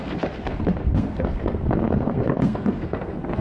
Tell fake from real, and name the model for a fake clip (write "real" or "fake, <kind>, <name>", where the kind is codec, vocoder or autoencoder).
fake, codec, SNAC